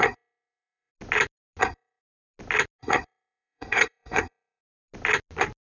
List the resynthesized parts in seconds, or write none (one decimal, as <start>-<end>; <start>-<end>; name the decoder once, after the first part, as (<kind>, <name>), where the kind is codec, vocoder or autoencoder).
0.0-0.9 (codec, SNAC); 1.6-2.0; 2.8-4.6